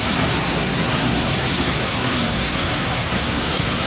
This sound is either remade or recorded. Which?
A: remade